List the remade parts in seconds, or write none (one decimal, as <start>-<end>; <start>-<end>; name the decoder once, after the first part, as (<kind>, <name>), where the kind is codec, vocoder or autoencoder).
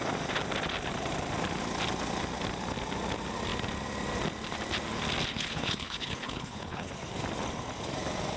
5.3-6.9 (codec, HILCodec)